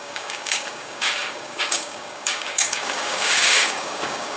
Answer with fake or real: fake